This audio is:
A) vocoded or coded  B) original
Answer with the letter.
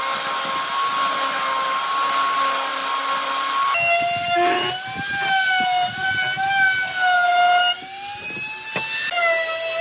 B